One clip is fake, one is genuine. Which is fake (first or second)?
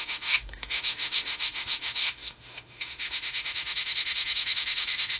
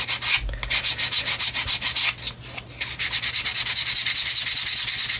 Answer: first